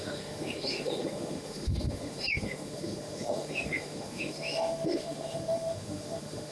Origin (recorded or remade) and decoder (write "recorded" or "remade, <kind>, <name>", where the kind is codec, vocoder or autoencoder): remade, autoencoder, DAC-VAE